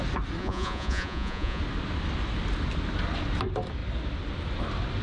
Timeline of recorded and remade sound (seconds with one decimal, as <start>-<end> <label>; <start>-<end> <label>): 0.0-0.4 recorded; 0.4-1.6 remade; 1.6-5.0 recorded